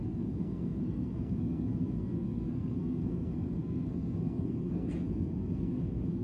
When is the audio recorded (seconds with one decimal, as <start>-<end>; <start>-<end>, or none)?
none